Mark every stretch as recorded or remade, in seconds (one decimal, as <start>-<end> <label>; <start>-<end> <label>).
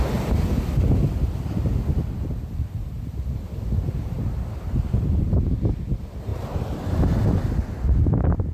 0.0-8.5 recorded